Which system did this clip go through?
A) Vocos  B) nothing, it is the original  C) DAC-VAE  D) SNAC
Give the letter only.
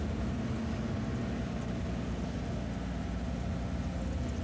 B